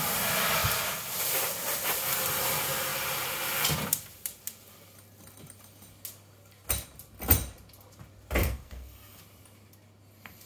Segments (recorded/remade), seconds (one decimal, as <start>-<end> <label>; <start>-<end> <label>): 0.0-8.4 recorded; 8.4-9.2 remade; 9.2-10.5 recorded